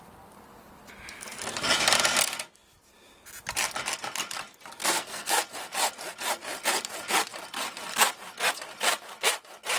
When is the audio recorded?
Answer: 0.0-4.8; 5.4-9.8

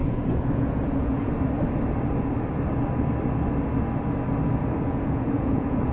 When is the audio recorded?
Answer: 1.3-4.8

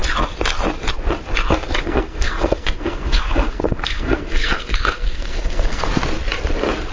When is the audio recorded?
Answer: 0.0-1.8; 5.9-6.9

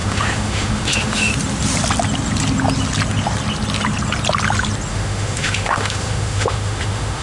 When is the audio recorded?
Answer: 1.3-4.9

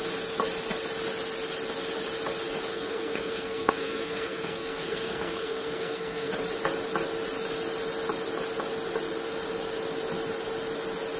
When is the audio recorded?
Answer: 0.0-2.7; 6.3-11.2

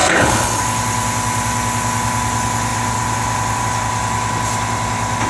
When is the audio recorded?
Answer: 0.6-5.3